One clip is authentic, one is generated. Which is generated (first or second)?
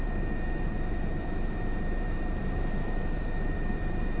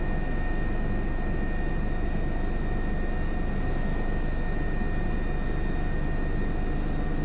first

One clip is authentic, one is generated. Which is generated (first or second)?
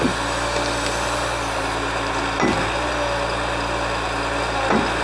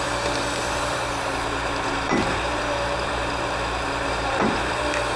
second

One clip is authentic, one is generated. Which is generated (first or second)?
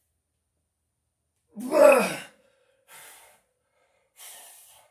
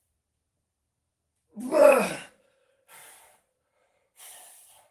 second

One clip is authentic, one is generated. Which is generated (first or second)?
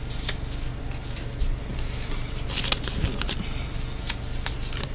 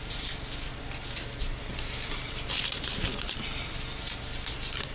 second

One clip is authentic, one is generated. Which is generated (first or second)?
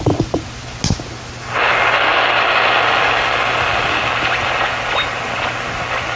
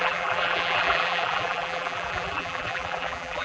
second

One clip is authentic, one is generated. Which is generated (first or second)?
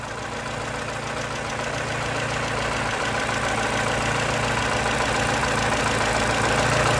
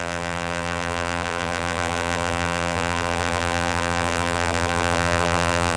second